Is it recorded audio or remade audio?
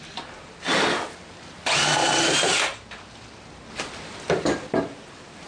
recorded